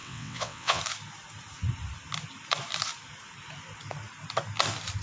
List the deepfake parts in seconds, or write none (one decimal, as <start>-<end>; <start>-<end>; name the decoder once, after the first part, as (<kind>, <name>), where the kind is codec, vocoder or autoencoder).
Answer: 0.0-0.8 (vocoder, WaveNeXt)